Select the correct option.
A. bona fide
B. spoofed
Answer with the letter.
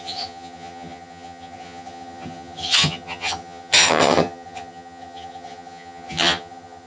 B